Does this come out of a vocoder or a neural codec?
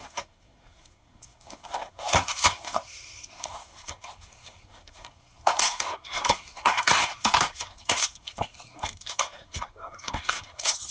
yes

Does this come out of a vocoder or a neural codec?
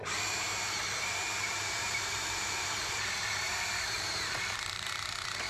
yes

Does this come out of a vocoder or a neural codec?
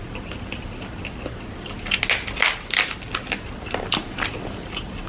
no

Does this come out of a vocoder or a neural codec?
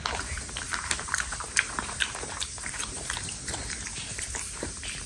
yes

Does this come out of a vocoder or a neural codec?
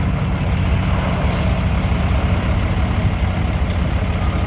no